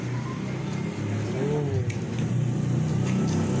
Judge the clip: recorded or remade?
recorded